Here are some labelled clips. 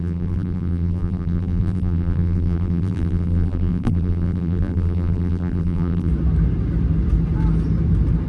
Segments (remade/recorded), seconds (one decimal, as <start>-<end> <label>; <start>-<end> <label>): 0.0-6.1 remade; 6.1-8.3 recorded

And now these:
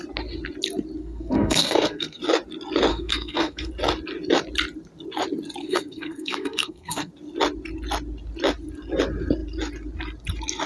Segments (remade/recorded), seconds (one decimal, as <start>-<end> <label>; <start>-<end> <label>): 0.0-1.0 recorded; 1.0-2.2 remade; 2.2-2.9 recorded; 2.9-3.7 remade; 3.7-5.6 recorded; 5.6-7.1 remade; 7.1-10.7 recorded

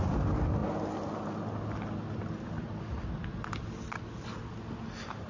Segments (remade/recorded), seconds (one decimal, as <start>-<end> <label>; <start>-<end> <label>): 0.0-5.3 recorded

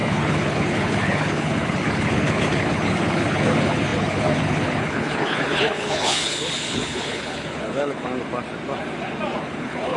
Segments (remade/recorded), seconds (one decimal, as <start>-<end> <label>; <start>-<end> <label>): 0.0-8.1 remade; 8.1-9.4 recorded; 9.4-10.0 remade

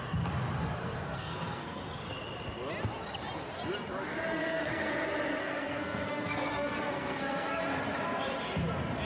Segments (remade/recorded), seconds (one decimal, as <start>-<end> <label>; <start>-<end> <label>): 0.0-0.8 recorded; 0.8-1.8 remade; 1.8-4.4 recorded; 4.4-4.9 remade; 4.9-5.4 recorded; 5.4-7.6 remade; 7.6-9.0 recorded